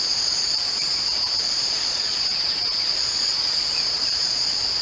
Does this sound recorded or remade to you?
remade